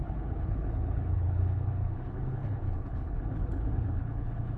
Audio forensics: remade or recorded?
remade